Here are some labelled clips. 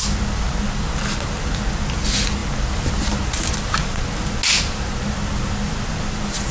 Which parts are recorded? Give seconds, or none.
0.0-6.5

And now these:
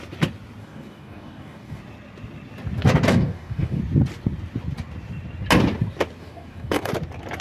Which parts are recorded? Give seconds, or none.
0.0-0.6; 1.8-3.1; 3.8-6.2; 6.9-7.4

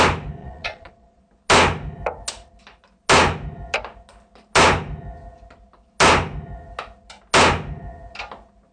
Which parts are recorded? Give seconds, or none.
0.0-0.4; 1.2-8.7

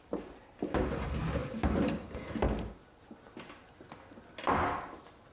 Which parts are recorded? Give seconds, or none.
0.0-5.3

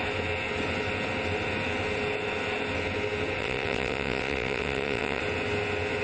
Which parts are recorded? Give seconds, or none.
0.0-3.4; 5.2-6.0

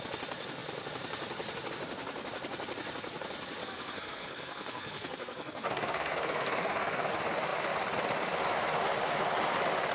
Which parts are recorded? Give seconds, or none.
0.0-3.6; 7.1-9.9

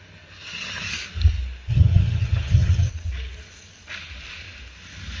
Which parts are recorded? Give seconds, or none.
0.0-1.7; 2.9-5.2

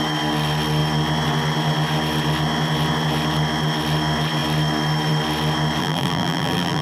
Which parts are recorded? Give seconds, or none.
0.0-5.8